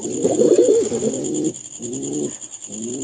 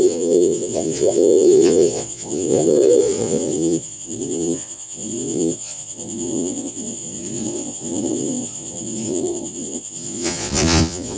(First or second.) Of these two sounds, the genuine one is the first